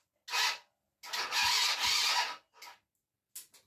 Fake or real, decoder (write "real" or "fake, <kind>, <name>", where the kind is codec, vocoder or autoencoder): real